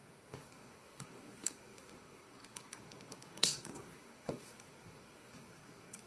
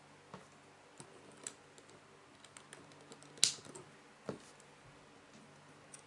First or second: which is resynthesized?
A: first